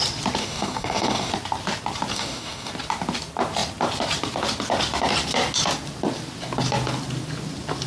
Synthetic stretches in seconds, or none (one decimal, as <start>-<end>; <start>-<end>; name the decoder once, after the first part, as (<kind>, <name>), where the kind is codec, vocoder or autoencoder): 0.4-1.3 (codec, DAC); 2.1-2.7